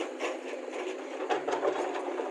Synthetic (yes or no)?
no